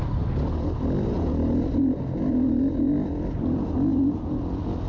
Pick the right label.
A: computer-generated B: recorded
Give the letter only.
B